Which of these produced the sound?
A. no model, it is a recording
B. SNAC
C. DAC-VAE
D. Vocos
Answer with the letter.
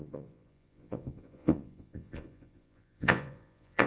D